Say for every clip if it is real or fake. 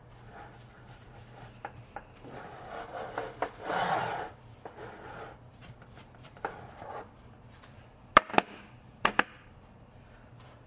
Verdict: fake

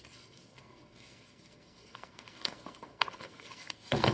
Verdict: fake